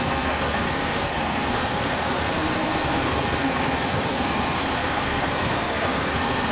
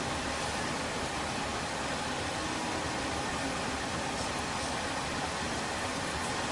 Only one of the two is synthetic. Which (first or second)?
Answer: first